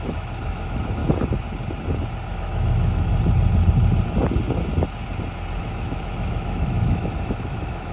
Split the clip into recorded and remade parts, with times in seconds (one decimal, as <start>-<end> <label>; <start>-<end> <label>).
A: 0.0-1.0 remade; 1.0-2.3 recorded; 2.3-3.1 remade; 3.1-5.6 recorded; 5.6-7.9 remade